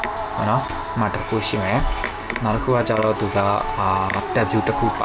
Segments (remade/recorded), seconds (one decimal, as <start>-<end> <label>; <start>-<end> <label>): 0.0-1.2 recorded; 1.2-4.2 remade; 4.2-5.0 recorded